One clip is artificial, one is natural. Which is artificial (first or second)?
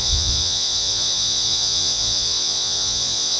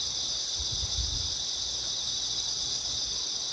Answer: first